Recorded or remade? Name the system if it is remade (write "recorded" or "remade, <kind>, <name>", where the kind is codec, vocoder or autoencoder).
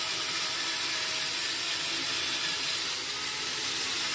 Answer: recorded